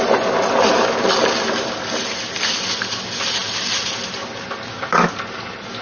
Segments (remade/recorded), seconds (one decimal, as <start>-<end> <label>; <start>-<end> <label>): 0.0-5.8 recorded

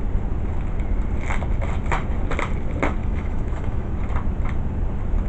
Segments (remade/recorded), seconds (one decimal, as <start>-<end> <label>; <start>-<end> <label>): 0.0-3.0 recorded; 3.0-3.9 remade; 3.9-5.3 recorded